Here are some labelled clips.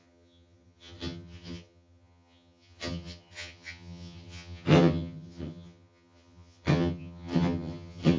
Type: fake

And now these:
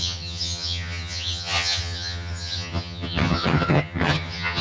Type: fake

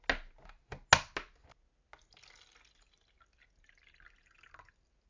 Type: real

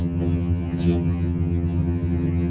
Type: fake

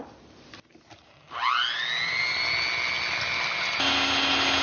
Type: real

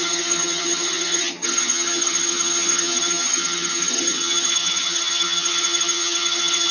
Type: fake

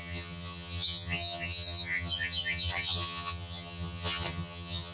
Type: fake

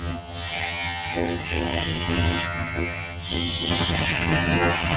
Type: fake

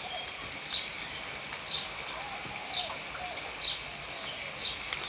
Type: real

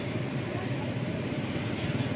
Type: real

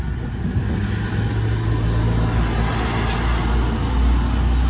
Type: real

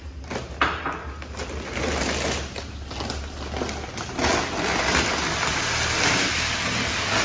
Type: real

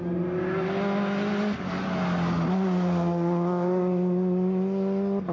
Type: real